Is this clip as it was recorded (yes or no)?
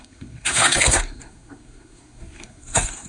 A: no